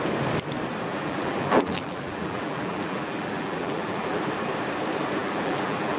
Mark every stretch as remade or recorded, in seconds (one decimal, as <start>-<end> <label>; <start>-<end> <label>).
0.0-0.9 recorded; 0.9-4.2 remade; 4.2-5.2 recorded; 5.2-6.0 remade